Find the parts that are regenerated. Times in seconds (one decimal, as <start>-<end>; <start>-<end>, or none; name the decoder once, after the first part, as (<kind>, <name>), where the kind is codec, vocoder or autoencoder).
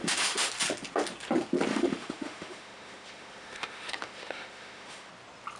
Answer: 0.0-0.5 (autoencoder, DAC-VAE); 1.7-5.1